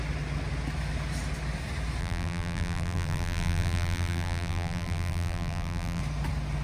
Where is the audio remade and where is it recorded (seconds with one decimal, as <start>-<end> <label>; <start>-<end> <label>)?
0.0-2.0 recorded; 2.0-6.0 remade; 6.0-6.6 recorded